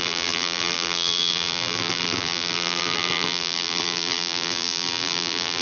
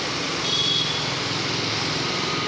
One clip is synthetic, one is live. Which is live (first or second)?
second